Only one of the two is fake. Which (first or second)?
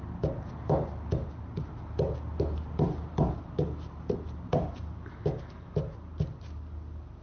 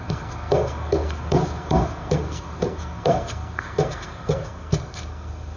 second